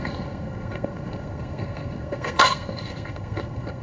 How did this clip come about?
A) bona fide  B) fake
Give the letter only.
B